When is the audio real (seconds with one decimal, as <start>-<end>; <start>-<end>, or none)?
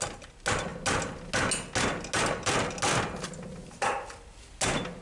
0.0-5.0